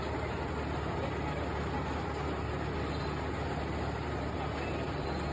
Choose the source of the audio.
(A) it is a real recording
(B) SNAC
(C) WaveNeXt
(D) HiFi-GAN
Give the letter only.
A